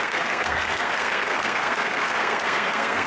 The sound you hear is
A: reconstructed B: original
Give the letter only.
A